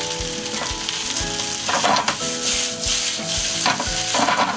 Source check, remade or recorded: recorded